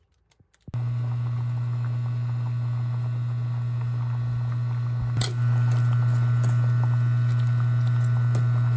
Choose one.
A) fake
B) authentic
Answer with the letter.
B